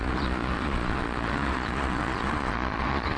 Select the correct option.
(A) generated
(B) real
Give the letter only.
A